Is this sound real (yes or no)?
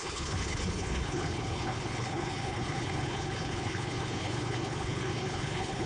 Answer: no